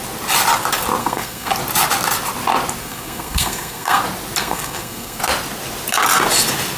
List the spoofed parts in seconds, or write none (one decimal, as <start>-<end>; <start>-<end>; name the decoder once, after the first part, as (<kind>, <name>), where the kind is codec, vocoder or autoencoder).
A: 1.0-1.5 (codec, SNAC); 2.8-4.0; 4.4-5.2